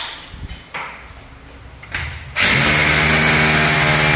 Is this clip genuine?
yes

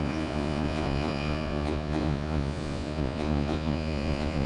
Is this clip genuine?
no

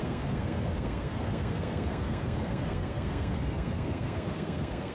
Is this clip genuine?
no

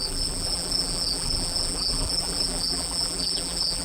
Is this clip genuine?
no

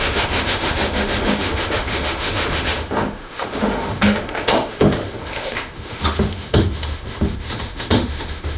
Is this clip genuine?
no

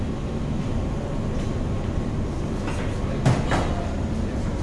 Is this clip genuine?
yes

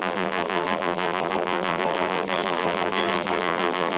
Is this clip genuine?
no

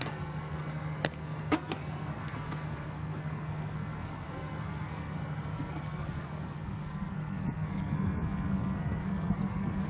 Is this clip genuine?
no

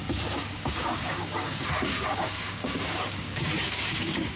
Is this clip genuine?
no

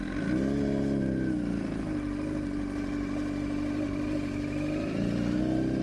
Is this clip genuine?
yes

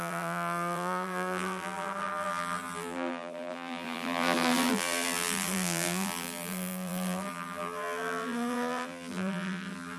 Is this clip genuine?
no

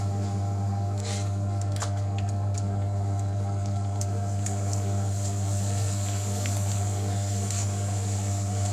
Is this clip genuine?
no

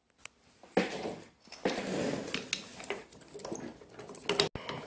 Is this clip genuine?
yes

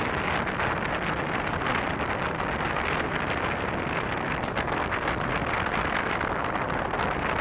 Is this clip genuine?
yes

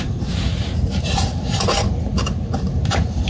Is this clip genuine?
no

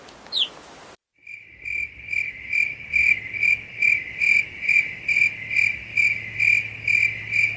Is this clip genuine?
yes